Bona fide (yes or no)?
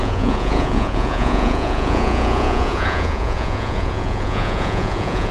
no